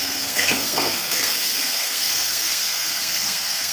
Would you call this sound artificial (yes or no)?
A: yes